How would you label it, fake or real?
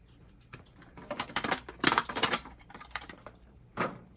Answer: fake